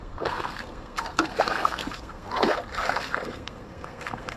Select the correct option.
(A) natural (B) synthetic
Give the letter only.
B